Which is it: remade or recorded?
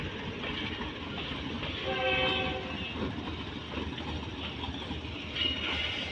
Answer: recorded